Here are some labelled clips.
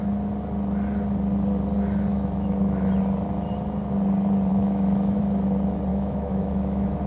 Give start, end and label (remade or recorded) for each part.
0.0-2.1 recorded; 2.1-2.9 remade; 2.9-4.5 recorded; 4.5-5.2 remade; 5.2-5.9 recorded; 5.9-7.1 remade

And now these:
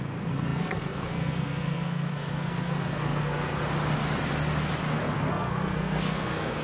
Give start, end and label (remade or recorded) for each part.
0.0-3.5 remade; 3.5-5.3 recorded; 5.3-6.6 remade